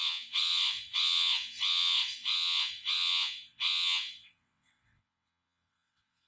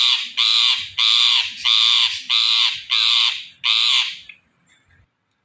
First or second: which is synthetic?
first